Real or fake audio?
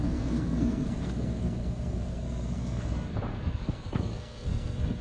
fake